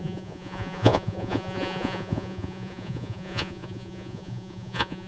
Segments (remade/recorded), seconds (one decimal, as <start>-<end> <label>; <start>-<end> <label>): 0.0-5.1 remade